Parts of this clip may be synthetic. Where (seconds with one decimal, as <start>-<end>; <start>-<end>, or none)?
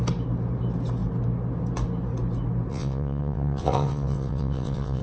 2.7-5.0